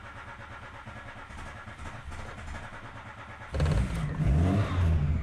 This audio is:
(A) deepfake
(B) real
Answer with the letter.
B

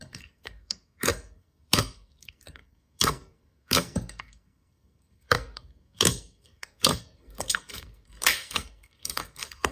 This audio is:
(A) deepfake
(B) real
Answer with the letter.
A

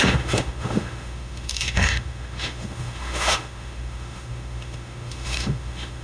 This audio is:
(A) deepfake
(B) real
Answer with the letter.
A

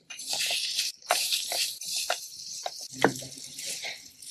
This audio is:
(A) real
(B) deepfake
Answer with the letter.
B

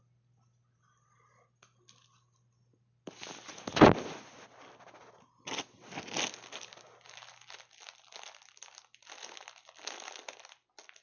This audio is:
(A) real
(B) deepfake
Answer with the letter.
A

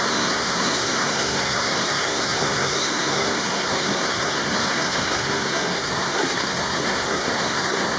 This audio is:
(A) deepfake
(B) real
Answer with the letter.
A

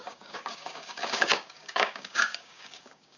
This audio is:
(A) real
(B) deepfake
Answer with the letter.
B